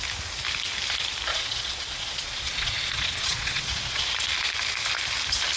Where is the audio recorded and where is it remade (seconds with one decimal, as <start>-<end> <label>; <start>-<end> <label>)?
0.0-1.3 recorded; 1.3-4.0 remade; 4.0-5.6 recorded